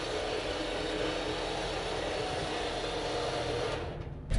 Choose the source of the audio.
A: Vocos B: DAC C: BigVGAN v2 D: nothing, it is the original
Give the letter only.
D